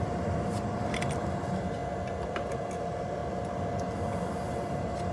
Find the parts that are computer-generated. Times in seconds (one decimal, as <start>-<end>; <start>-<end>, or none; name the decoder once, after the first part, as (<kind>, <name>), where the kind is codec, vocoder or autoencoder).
0.0-1.8 (vocoder, BigVGAN v2); 2.8-3.2; 4.3-5.1